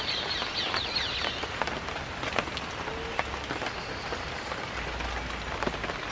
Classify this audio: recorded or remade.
recorded